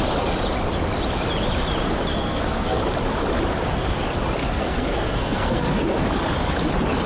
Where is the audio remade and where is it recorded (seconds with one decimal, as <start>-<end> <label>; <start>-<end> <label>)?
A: 0.0-2.1 recorded; 2.1-2.8 remade; 2.8-4.4 recorded; 4.4-6.0 remade; 6.0-7.1 recorded